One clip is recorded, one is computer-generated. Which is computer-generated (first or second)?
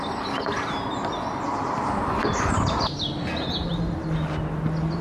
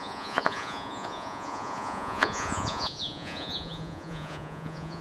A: second